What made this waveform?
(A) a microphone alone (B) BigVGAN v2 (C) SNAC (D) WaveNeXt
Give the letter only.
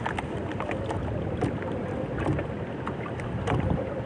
A